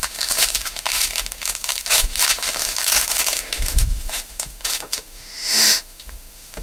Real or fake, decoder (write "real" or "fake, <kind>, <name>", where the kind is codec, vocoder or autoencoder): fake, autoencoder, DAC-VAE